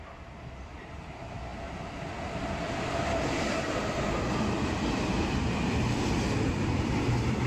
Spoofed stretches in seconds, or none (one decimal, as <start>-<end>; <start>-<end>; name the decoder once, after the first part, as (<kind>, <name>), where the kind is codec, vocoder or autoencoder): 5.2-6.1 (vocoder, BigVGAN v2)